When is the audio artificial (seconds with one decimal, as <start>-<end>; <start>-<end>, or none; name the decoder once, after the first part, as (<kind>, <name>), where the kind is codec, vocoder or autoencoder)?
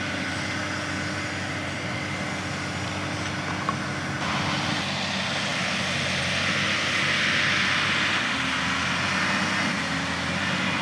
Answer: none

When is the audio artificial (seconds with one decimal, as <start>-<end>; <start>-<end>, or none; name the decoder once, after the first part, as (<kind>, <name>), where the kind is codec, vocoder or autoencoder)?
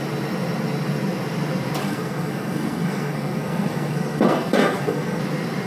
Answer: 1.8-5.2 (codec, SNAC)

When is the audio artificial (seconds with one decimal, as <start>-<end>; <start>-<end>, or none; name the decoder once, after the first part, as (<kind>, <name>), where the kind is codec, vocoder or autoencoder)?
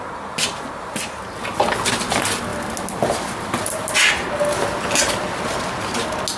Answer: none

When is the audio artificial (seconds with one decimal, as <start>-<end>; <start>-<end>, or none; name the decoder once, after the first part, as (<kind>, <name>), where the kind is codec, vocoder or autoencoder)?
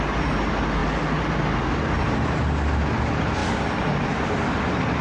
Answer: none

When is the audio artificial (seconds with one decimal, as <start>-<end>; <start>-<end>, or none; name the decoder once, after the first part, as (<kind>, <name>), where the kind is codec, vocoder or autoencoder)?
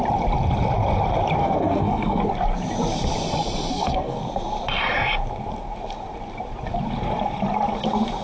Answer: 1.4-2.2 (codec, SNAC); 3.7-4.2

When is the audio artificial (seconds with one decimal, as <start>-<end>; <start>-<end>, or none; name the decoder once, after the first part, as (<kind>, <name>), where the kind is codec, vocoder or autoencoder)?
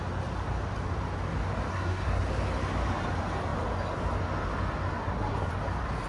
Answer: 1.7-2.2 (codec, SNAC); 5.0-5.5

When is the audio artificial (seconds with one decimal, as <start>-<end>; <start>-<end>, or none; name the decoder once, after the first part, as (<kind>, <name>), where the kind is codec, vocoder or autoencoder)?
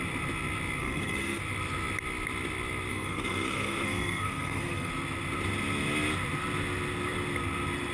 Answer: 0.8-1.4 (codec, SNAC); 2.9-4.9